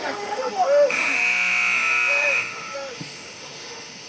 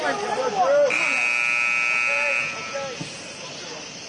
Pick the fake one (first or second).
first